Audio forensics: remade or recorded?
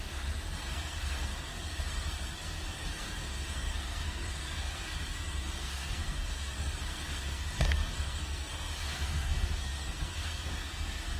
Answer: remade